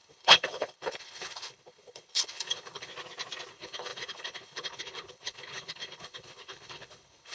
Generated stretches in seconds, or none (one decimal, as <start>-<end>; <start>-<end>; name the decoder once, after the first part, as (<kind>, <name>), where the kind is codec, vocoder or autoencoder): 0.0-2.9 (codec, HILCodec); 3.5-7.3